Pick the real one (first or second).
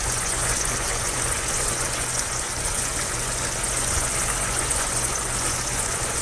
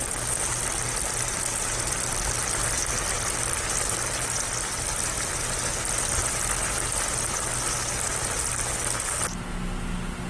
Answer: second